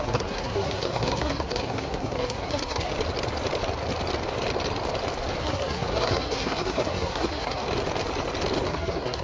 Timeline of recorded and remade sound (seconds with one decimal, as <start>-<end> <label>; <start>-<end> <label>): 0.0-2.9 remade; 2.9-5.4 recorded; 5.4-7.6 remade; 7.6-8.7 recorded; 8.7-9.2 remade